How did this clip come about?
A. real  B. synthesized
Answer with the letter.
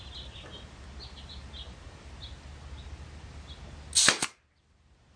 A